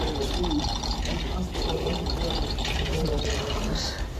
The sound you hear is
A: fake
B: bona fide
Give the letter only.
B